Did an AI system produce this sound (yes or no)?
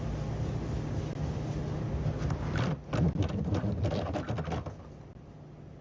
no